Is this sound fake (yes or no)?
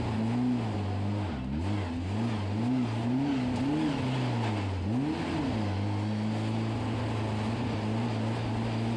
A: no